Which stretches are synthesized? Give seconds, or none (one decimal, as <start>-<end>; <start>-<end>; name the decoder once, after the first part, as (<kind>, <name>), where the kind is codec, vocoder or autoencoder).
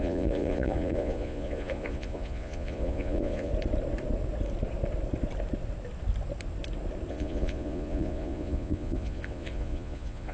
0.0-3.5 (vocoder, Vocos); 7.1-10.3